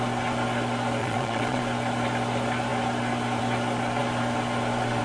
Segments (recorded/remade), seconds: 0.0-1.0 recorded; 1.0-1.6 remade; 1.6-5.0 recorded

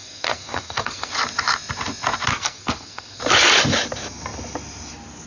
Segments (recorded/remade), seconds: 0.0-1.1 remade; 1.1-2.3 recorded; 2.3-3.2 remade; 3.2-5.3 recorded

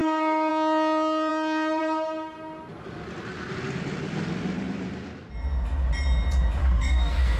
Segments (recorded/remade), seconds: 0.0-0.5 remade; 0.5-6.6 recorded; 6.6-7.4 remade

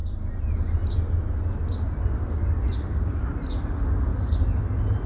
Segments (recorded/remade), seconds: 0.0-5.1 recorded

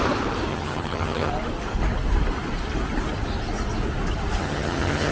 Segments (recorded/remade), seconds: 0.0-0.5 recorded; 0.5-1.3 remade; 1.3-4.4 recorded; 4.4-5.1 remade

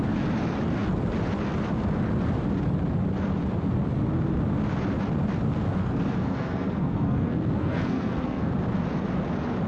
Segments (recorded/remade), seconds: 0.0-5.8 recorded; 5.8-8.5 remade; 8.5-9.7 recorded

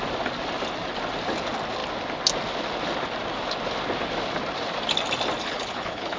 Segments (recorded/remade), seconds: 0.0-5.4 recorded; 5.4-6.2 remade

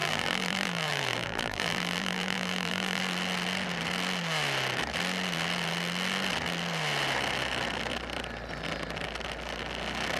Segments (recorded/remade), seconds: 0.0-3.0 remade; 3.0-10.2 recorded